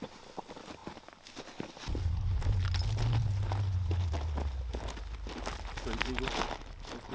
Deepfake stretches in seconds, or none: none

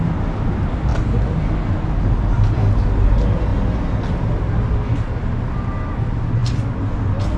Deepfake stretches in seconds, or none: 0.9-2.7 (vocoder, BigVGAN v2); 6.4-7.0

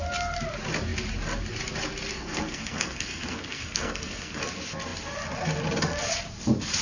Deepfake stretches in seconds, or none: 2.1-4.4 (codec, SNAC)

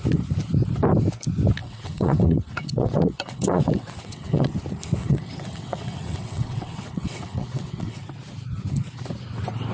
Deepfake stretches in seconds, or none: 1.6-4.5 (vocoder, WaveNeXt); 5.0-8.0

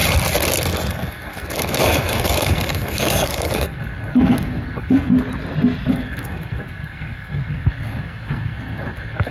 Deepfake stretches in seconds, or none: 0.9-5.1 (codec, SNAC); 5.9-9.3

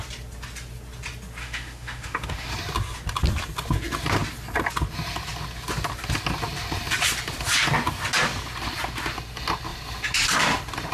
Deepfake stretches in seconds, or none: 1.4-2.5 (autoencoder, DAC-VAE)

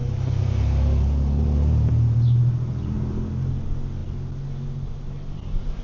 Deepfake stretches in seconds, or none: none